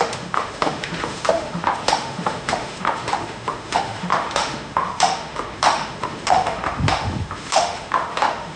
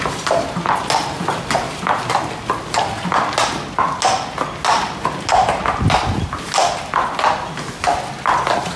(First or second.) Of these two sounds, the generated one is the first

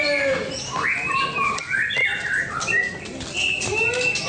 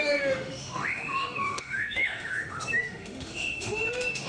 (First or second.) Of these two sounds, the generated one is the second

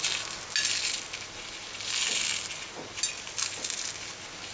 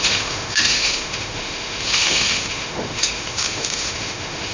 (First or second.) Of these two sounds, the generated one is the second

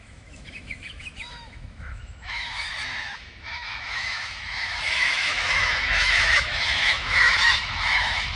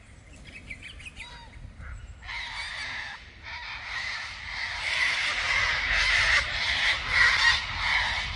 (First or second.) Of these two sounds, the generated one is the first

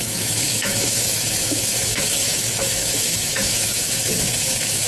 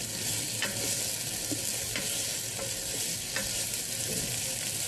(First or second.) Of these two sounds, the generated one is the first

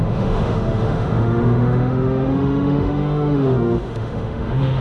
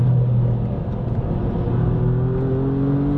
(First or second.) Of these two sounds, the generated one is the first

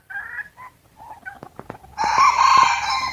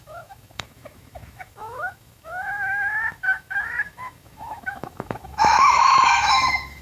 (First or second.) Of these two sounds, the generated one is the second